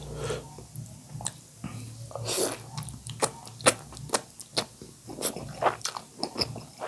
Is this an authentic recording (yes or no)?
yes